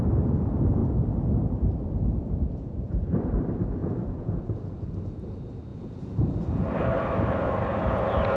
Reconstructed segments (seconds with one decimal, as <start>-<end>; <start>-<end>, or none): 2.4-3.0; 3.8-4.8; 5.7-6.8

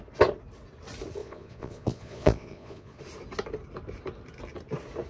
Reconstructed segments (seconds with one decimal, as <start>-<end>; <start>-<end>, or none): 1.2-3.0

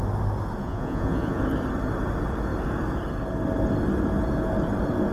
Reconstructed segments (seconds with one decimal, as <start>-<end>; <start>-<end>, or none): 0.6-1.4

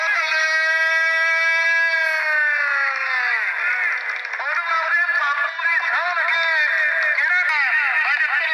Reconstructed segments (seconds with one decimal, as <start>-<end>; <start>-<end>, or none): none

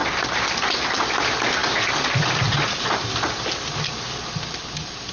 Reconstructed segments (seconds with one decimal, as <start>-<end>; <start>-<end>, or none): none

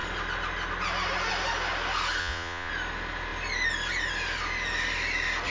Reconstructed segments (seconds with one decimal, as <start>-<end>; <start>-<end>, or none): 2.2-2.7

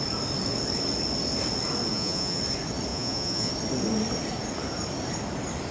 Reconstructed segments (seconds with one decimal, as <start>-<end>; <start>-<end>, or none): 1.9-2.4; 2.9-3.5